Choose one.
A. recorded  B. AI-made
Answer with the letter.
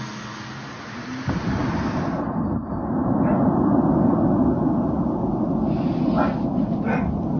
A